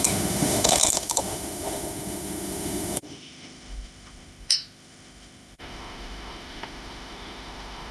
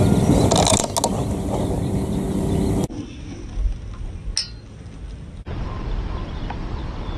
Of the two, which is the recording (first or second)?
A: second